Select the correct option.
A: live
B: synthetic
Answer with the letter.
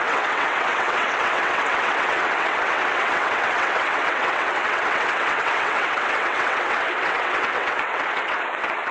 B